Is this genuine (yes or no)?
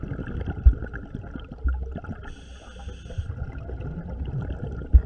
yes